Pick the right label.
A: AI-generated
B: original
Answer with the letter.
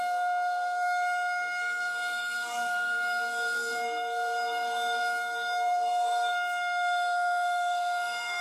A